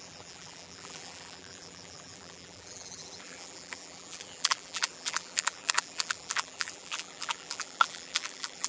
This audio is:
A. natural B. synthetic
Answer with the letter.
B